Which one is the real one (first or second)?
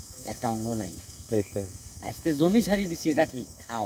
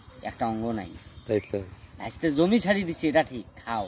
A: second